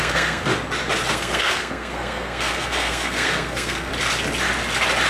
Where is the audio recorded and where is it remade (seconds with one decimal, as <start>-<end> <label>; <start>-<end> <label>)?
0.0-0.5 remade; 0.5-1.1 recorded; 1.1-3.9 remade; 3.9-5.1 recorded

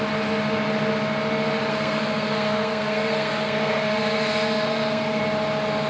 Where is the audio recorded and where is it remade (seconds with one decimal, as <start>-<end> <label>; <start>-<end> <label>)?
0.0-1.7 recorded; 1.7-5.2 remade; 5.2-5.9 recorded